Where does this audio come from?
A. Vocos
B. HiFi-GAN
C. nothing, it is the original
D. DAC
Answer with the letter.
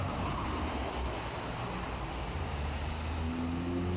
C